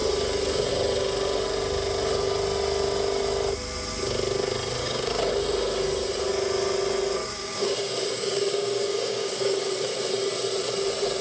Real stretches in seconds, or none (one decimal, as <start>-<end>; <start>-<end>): 0.0-4.8; 5.3-7.2; 9.7-11.2